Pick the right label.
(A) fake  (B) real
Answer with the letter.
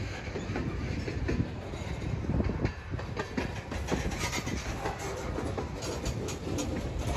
B